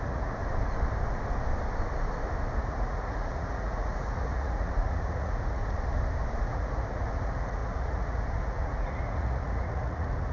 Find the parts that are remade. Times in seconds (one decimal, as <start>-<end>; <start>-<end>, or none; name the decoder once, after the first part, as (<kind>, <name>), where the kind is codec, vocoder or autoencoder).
0.0-0.4 (vocoder, Vocos); 2.6-5.6; 6.4-10.3

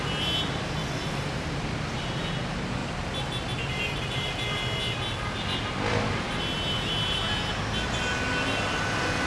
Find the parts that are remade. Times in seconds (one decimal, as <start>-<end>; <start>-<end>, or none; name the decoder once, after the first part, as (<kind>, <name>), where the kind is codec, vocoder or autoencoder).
none

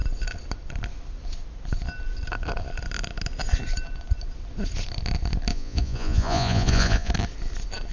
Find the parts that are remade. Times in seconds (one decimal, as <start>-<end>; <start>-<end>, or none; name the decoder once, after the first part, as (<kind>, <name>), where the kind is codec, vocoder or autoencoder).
5.5-7.1 (vocoder, Vocos)

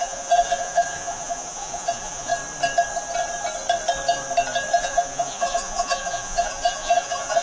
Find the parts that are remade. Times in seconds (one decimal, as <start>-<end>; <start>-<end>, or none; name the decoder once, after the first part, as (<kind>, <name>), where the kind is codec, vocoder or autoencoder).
0.0-2.3 (vocoder, Vocos); 4.8-7.4